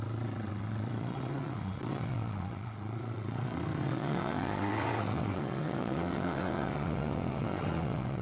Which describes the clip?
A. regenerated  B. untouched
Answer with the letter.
A